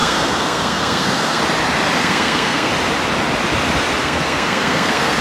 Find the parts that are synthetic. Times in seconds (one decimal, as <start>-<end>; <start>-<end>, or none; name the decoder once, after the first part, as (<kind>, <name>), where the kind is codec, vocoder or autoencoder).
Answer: 0.0-1.4 (codec, SNAC); 2.0-2.7; 4.0-5.2